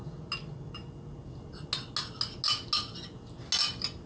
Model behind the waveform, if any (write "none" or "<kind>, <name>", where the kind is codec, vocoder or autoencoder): none